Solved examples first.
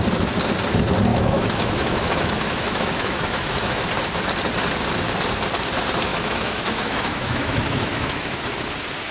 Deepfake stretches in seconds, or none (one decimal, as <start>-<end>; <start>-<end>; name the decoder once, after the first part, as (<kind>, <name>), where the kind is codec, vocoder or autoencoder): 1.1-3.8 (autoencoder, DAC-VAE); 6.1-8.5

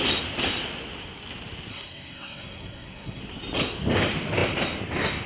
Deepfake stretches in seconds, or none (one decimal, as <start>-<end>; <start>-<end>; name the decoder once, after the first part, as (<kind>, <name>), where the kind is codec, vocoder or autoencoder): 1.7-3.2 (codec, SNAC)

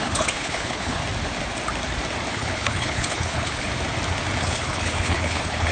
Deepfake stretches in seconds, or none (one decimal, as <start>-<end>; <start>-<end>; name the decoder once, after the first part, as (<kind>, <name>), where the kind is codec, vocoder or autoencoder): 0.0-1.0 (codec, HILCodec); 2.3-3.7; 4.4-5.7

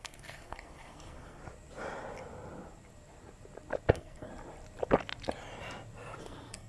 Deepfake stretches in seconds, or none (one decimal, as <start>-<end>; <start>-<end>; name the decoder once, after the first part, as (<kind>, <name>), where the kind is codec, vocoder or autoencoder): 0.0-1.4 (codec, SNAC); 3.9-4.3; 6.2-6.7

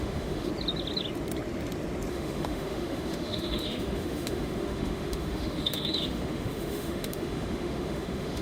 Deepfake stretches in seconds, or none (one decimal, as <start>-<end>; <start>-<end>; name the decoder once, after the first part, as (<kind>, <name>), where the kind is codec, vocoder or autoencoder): 0.0-0.5 (autoencoder, DAC-VAE); 2.1-8.4

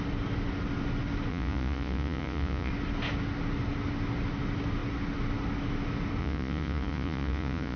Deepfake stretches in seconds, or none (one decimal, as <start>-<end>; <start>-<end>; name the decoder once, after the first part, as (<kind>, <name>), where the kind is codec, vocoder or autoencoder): 1.3-2.7 (vocoder, Vocos); 6.2-7.8